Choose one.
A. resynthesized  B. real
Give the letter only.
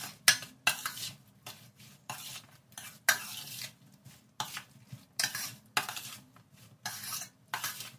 B